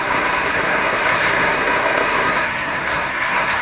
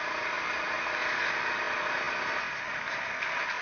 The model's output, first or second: first